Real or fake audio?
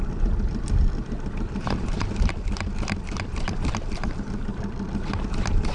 real